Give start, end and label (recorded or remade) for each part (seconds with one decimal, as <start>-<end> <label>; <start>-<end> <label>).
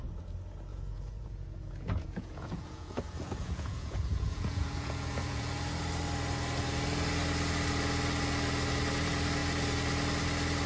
0.0-0.7 recorded; 0.7-5.5 remade; 5.5-10.7 recorded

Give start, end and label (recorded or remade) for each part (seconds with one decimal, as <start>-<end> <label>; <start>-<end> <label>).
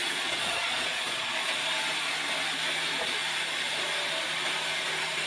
0.0-1.6 remade; 1.6-5.3 recorded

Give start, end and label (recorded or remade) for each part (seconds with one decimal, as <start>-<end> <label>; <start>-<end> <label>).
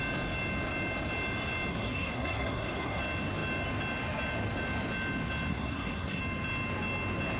0.0-1.7 recorded; 1.7-3.0 remade; 3.0-5.5 recorded; 5.5-6.2 remade; 6.2-7.4 recorded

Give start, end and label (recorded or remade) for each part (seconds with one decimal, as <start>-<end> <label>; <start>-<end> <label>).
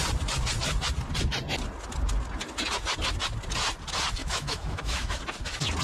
0.0-4.2 recorded; 4.2-5.2 remade; 5.2-5.8 recorded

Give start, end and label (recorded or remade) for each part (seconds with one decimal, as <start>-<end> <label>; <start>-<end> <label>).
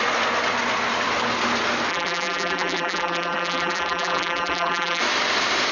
0.0-1.9 recorded; 1.9-5.0 remade; 5.0-5.7 recorded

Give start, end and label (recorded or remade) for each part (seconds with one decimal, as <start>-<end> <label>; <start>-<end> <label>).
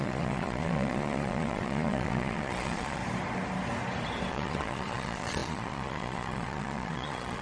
0.0-3.0 remade; 3.0-4.3 recorded; 4.3-7.4 remade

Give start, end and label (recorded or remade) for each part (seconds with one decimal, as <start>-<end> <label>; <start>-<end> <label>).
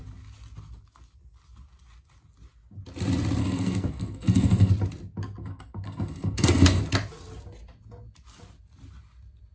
0.0-3.4 recorded; 3.4-4.7 remade; 4.7-5.4 recorded; 5.4-6.8 remade; 6.8-9.5 recorded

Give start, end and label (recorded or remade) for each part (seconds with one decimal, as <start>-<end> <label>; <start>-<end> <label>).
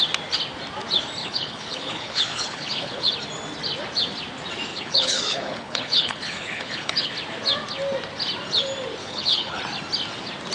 0.0-1.2 recorded; 1.2-3.1 remade; 3.1-4.7 recorded; 4.7-7.1 remade; 7.1-9.0 recorded; 9.0-9.6 remade; 9.6-10.5 recorded